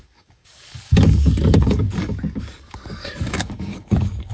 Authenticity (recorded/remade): remade